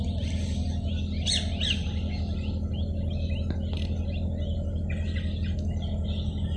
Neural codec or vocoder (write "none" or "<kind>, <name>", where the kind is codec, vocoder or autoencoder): none